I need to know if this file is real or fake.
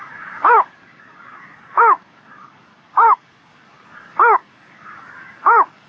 fake